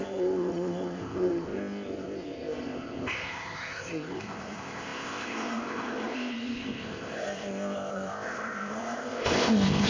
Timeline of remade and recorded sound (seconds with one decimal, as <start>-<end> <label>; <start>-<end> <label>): 0.0-9.9 remade